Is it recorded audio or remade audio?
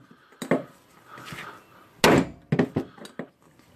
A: recorded